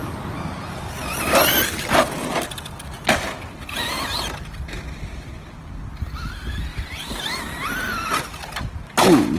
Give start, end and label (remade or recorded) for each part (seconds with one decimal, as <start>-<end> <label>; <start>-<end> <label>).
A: 0.0-9.4 recorded